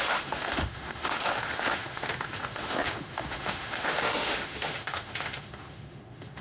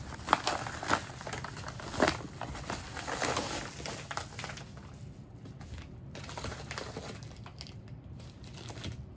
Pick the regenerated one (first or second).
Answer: first